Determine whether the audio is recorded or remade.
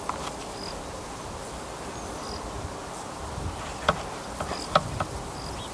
recorded